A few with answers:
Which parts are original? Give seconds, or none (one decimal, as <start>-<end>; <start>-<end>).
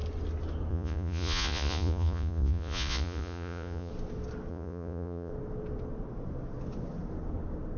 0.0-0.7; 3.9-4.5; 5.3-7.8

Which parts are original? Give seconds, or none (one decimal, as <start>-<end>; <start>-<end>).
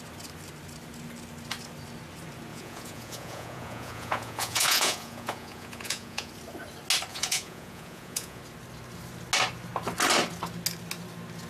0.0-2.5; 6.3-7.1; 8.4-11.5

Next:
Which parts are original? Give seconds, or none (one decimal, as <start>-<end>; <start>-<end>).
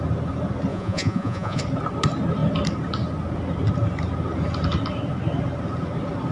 0.0-0.7; 1.6-6.3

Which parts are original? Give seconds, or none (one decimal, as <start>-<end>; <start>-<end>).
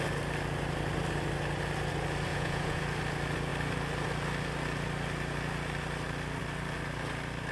0.0-2.3; 2.8-7.5